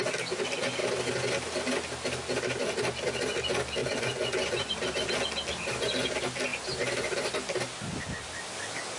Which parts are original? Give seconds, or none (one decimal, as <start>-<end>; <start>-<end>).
0.0-3.8; 4.7-9.0